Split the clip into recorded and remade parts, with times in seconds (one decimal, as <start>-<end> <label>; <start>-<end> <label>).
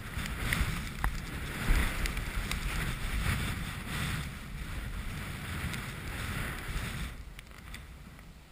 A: 0.0-8.5 recorded